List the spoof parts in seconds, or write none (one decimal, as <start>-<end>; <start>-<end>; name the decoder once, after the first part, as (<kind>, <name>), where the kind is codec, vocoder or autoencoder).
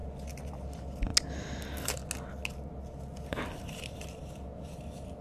none